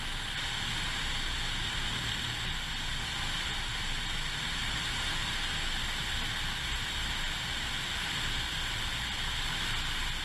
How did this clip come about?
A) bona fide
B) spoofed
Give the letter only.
A